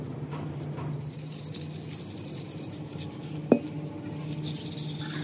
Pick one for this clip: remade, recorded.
recorded